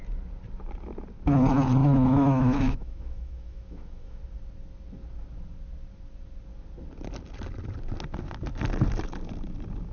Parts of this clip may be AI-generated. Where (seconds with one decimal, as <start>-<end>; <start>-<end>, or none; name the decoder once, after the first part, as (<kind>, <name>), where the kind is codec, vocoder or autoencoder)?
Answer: 1.8-4.2 (autoencoder, DAC-VAE)